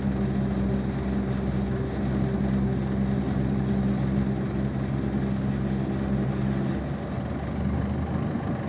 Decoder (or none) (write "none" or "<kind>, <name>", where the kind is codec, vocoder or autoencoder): none